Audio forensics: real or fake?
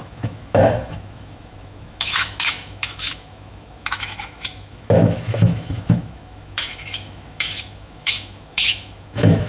fake